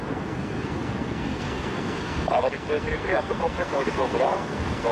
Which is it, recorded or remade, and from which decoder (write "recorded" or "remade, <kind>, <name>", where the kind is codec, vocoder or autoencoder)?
remade, codec, SNAC